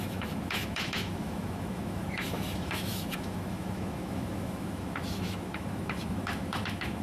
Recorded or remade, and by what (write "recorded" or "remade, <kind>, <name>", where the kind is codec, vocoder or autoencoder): remade, autoencoder, DAC-VAE